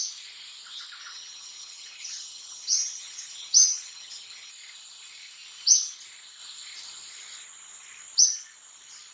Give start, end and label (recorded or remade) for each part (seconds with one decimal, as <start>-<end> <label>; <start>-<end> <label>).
0.0-1.0 recorded; 1.0-4.5 remade; 4.5-9.1 recorded